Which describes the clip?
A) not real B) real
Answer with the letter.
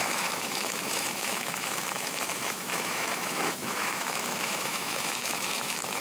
A